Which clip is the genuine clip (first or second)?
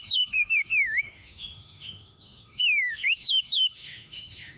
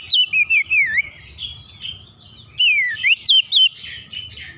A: second